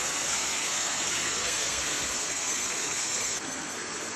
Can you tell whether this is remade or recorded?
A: remade